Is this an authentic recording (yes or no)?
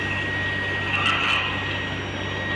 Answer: yes